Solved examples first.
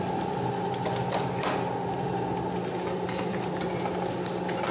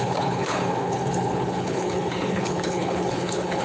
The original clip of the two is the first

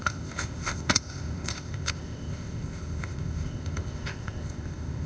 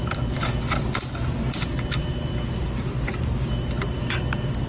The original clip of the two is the second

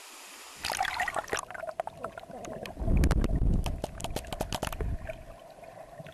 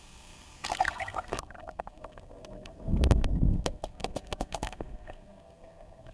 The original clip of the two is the first